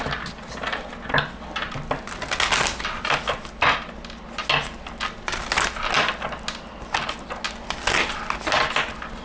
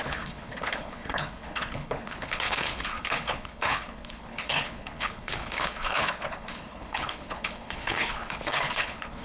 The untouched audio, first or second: first